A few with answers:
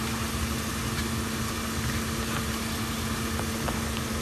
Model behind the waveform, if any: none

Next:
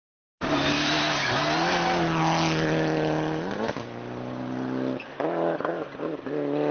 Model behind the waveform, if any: none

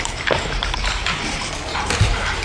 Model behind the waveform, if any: vocoder, BigVGAN v2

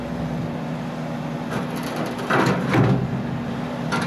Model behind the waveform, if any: none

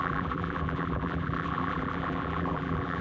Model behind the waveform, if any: vocoder, BigVGAN v2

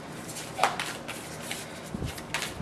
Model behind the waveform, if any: none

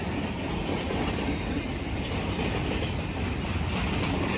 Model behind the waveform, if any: vocoder, BigVGAN v2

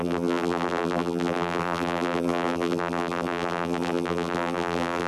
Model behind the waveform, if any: vocoder, BigVGAN v2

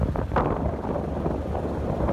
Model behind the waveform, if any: vocoder, BigVGAN v2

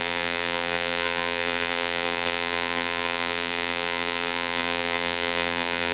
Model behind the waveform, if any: vocoder, BigVGAN v2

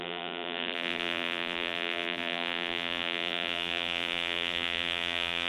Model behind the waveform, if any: vocoder, BigVGAN v2